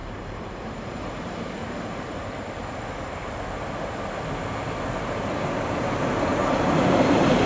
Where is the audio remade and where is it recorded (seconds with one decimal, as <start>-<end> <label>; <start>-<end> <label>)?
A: 0.0-2.6 remade; 2.6-5.0 recorded; 5.0-7.5 remade

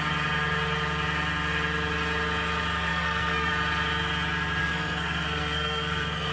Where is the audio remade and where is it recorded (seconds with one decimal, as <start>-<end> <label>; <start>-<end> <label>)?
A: 0.0-2.9 recorded; 2.9-3.5 remade; 3.5-4.6 recorded; 4.6-6.3 remade